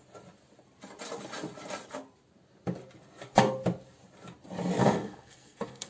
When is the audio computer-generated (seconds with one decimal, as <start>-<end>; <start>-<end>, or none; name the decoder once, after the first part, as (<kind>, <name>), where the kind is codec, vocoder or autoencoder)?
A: 4.8-5.9 (codec, SNAC)